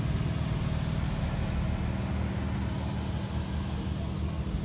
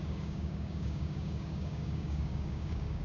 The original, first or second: first